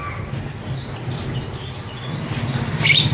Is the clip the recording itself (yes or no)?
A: yes